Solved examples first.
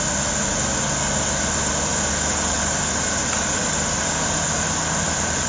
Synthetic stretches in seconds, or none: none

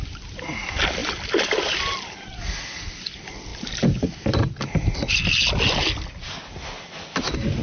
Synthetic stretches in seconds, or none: none

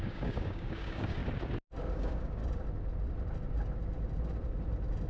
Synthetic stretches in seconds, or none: 0.0-1.2 (codec, DAC); 1.9-2.4

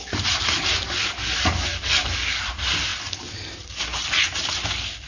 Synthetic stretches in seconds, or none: 1.7-2.4 (codec, DAC)

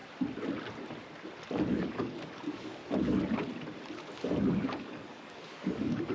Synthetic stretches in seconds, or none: 1.7-2.8 (codec, DAC); 4.5-6.1

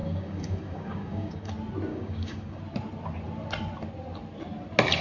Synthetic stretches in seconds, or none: 0.0-1.5 (codec, DAC); 1.9-2.6

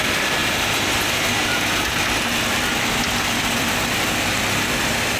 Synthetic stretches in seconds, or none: none